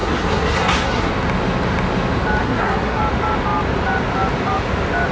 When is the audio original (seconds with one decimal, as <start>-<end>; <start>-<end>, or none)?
1.1-2.4; 3.0-5.1